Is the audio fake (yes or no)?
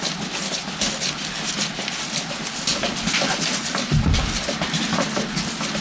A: no